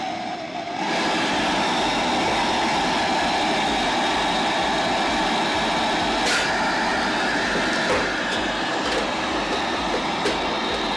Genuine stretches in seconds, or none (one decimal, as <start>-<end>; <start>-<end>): 0.0-11.0

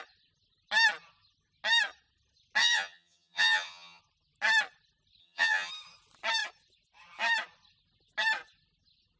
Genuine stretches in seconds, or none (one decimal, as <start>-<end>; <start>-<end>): 0.0-2.6; 4.0-5.2; 5.7-9.2

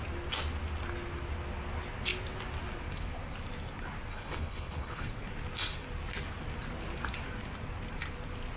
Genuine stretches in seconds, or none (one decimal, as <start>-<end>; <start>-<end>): 0.0-4.1; 5.1-8.6

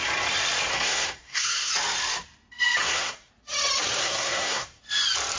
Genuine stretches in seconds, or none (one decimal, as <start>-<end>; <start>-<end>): 0.0-0.7; 1.7-2.8; 3.3-4.0; 4.8-5.4

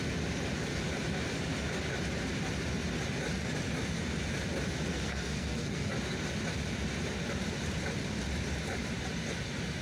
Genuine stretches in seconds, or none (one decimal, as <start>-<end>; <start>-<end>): 0.0-4.9; 5.9-9.8

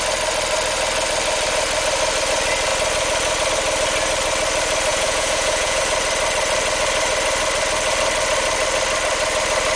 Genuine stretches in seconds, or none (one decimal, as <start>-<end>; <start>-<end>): 0.0-4.9; 5.8-9.8

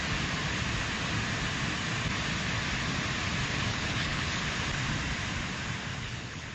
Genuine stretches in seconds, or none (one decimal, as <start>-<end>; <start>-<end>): 0.0-3.7; 4.4-5.9